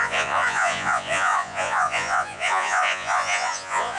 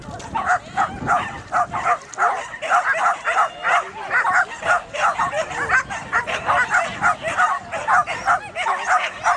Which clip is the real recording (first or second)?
second